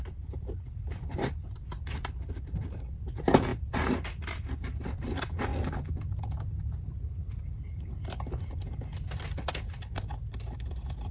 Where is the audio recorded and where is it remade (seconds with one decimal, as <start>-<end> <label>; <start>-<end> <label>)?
0.0-3.5 remade; 3.5-4.9 recorded; 4.9-5.5 remade; 5.5-9.6 recorded; 9.6-11.1 remade